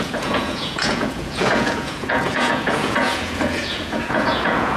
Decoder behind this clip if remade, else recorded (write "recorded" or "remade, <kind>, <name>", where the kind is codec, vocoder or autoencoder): remade, vocoder, Vocos